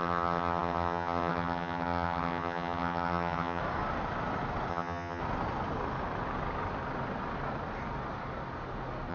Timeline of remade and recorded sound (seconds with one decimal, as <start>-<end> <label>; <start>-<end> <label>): 0.0-3.6 remade; 3.6-4.7 recorded; 4.7-5.2 remade; 5.2-9.1 recorded